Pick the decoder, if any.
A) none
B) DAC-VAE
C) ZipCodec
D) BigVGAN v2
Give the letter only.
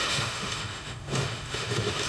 B